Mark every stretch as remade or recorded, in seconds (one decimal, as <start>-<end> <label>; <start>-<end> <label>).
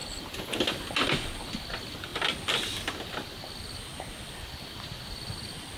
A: 0.0-5.8 recorded